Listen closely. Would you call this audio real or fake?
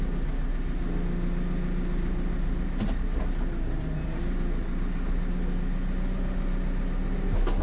real